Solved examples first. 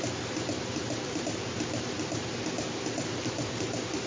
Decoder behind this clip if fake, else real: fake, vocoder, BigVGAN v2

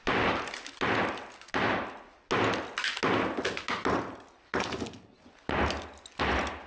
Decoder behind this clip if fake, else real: real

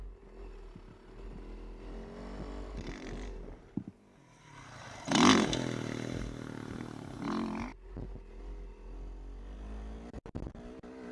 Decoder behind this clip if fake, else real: real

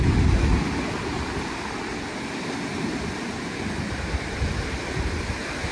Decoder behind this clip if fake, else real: real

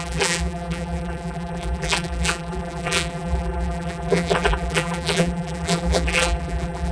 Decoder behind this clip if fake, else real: fake, vocoder, BigVGAN v2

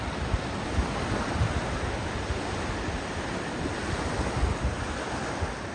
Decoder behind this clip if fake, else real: real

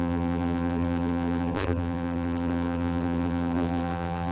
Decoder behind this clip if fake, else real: fake, vocoder, BigVGAN v2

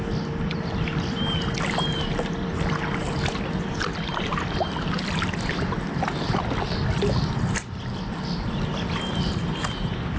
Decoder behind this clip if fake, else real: real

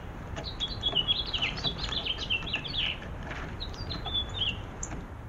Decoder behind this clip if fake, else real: fake, vocoder, BigVGAN v2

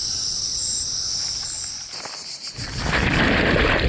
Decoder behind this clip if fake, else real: fake, vocoder, BigVGAN v2